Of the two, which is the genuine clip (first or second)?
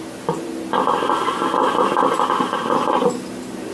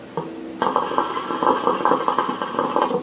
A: second